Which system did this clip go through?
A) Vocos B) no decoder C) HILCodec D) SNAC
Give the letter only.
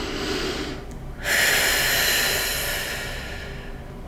B